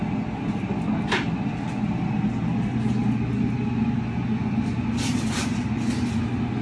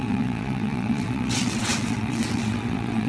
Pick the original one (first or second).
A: first